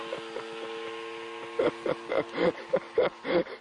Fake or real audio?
real